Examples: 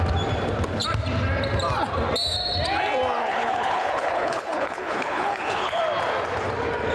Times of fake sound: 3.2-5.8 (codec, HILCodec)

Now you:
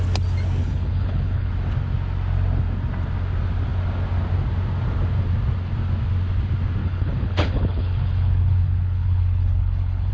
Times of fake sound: 0.6-1.5 (codec, HILCodec); 6.8-10.1

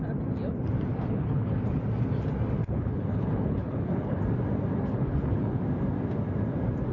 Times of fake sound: 0.9-1.6 (codec, HILCodec); 2.6-4.2; 4.7-5.6

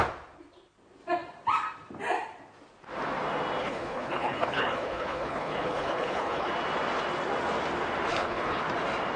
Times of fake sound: 3.6-6.5 (codec, HILCodec); 8.1-8.6